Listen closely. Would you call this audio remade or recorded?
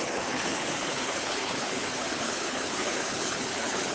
remade